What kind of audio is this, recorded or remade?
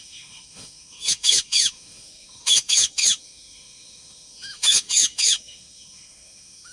remade